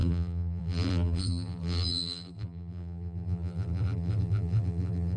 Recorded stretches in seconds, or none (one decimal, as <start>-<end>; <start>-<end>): none